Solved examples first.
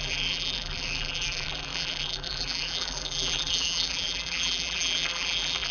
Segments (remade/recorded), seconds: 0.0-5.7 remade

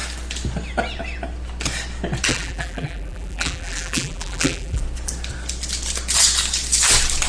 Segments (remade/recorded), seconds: 0.0-2.3 recorded; 2.3-4.8 remade; 4.8-7.3 recorded